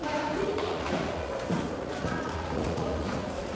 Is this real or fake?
fake